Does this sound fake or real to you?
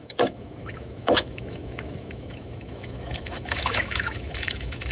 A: fake